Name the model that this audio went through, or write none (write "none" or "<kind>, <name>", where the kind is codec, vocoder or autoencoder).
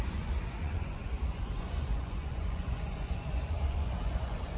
vocoder, Vocos